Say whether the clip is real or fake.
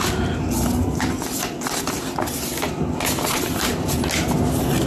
real